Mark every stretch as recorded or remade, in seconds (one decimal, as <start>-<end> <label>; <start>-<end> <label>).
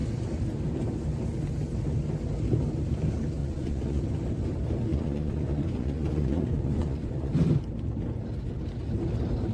0.0-3.4 recorded; 3.4-4.0 remade; 4.0-4.9 recorded; 4.9-7.3 remade; 7.3-9.5 recorded